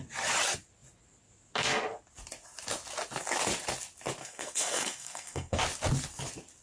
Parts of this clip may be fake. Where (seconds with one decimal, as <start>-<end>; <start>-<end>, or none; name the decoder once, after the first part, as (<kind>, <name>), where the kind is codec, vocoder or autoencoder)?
4.2-5.6 (codec, SNAC)